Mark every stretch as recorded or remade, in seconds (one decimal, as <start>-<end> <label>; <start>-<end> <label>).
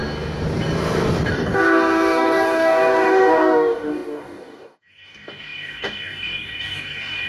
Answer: 0.0-1.3 recorded; 1.3-7.3 remade